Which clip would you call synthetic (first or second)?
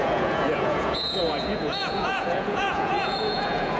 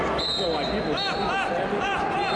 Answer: first